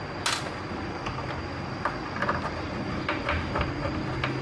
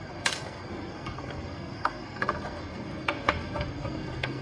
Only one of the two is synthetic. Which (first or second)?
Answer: second